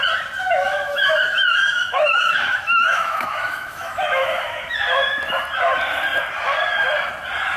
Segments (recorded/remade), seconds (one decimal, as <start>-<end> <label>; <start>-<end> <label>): 0.0-0.6 recorded; 0.6-5.2 remade; 5.2-7.6 recorded